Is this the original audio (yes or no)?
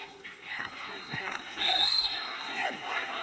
no